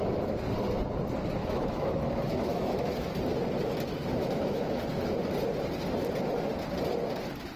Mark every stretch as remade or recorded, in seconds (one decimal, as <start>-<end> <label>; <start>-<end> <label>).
0.0-1.4 recorded; 1.4-3.1 remade; 3.1-4.2 recorded; 4.2-4.8 remade; 4.8-7.6 recorded